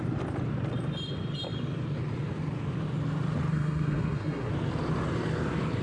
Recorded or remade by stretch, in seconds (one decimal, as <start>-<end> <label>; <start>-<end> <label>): 0.0-3.5 recorded; 3.5-4.5 remade; 4.5-5.8 recorded

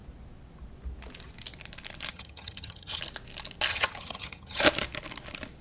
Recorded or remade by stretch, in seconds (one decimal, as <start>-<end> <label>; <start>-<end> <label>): 0.0-2.1 recorded; 2.1-3.0 remade; 3.0-3.7 recorded; 3.7-4.6 remade; 4.6-5.6 recorded

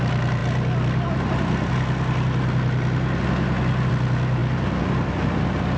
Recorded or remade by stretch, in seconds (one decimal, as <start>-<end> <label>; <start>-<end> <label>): 0.0-5.8 recorded

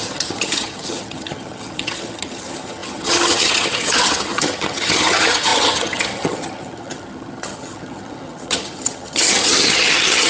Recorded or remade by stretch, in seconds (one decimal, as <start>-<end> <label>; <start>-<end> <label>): 0.0-10.3 remade

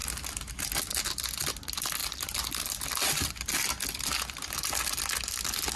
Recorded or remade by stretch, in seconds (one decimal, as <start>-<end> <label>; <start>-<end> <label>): 0.0-2.0 recorded; 2.0-3.3 remade; 3.3-5.8 recorded

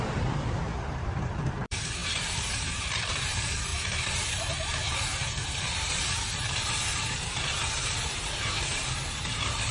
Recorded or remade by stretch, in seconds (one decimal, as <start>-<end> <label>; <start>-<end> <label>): 0.0-9.7 remade

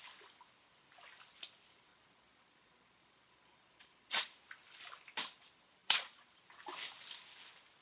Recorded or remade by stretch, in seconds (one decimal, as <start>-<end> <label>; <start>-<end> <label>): 0.0-1.9 recorded; 1.9-4.3 remade; 4.3-5.8 recorded; 5.8-6.4 remade; 6.4-7.8 recorded